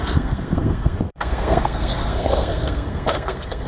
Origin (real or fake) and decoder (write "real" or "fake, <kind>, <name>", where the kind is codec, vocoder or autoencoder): fake, codec, SNAC